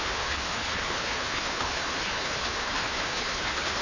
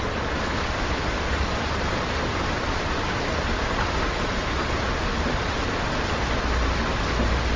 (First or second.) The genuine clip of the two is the second